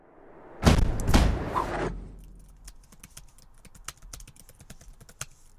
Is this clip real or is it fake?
real